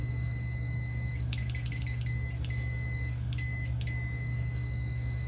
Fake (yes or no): yes